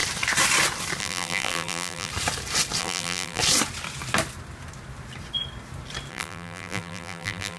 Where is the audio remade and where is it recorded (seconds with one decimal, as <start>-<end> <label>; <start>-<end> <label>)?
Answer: 0.0-1.0 recorded; 1.0-2.1 remade; 2.1-2.8 recorded; 2.8-3.4 remade; 3.4-6.1 recorded; 6.1-7.6 remade